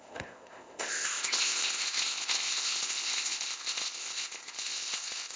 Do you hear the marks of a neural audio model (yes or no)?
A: yes